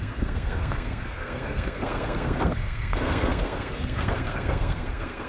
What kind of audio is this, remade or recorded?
remade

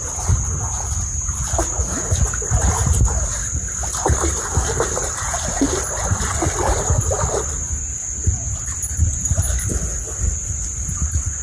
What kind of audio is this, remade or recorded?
recorded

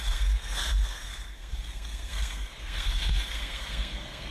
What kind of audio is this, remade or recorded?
remade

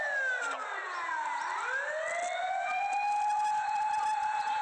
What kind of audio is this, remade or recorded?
recorded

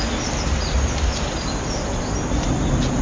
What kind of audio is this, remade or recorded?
recorded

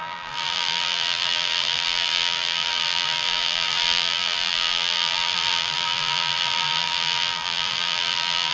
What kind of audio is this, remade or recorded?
remade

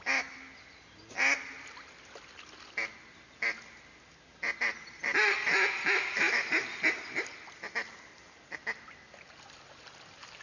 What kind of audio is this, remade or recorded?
recorded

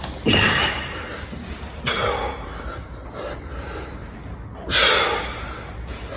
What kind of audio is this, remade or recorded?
recorded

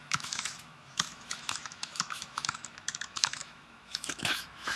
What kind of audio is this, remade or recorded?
remade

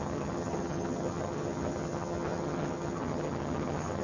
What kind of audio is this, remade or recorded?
remade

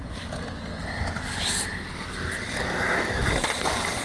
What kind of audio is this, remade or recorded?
recorded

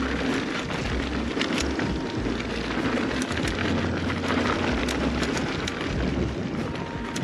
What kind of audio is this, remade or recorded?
recorded